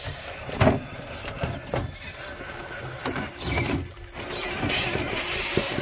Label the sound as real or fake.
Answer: real